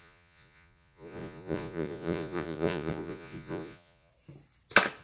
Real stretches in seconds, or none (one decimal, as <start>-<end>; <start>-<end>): 4.1-5.0